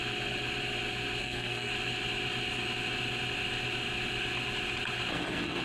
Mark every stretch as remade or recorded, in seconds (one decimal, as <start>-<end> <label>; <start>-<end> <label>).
0.0-1.2 recorded; 1.2-1.7 remade; 1.7-5.1 recorded; 5.1-5.6 remade